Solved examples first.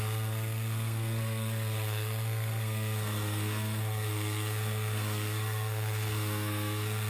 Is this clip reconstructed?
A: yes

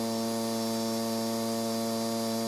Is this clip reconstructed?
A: no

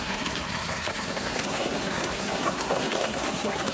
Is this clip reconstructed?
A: yes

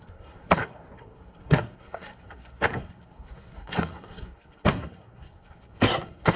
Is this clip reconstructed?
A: yes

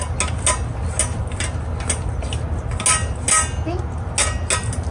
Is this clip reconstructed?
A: no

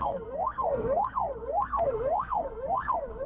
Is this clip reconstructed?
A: yes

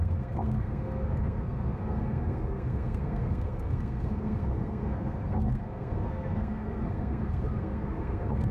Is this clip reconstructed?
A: yes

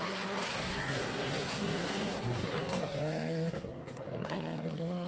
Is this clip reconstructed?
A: yes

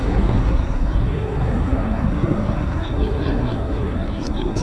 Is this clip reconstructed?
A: yes